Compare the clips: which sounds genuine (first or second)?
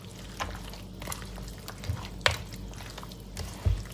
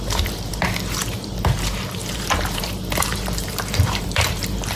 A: first